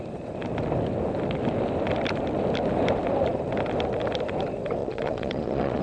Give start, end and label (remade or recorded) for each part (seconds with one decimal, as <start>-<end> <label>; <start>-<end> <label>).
0.0-4.8 recorded; 4.8-5.8 remade